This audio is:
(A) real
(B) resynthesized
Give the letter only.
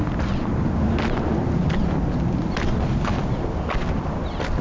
A